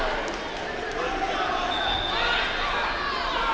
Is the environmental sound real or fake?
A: real